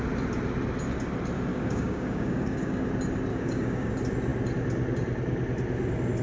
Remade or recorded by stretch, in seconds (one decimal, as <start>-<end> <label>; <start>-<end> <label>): 0.0-1.5 recorded; 1.5-2.9 remade; 2.9-3.3 recorded; 3.3-3.9 remade; 3.9-6.2 recorded